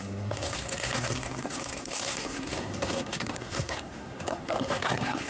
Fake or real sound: fake